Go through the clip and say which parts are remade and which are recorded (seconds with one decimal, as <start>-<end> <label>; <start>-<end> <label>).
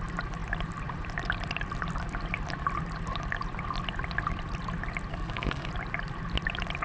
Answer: 0.0-5.1 recorded; 5.1-5.7 remade; 5.7-6.8 recorded